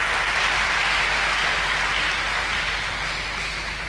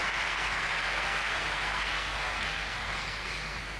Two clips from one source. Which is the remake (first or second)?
second